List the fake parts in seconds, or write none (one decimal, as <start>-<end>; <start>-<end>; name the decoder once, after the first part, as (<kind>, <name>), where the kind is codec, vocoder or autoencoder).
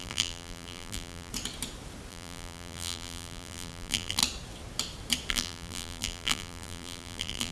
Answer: 0.0-1.3 (vocoder, BigVGAN v2); 2.1-4.2; 5.3-7.5